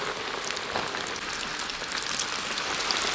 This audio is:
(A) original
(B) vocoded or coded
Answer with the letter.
A